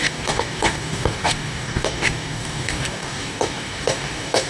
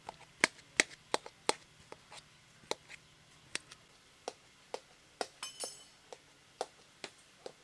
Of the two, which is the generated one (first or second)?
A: first